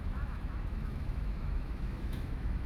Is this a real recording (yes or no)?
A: no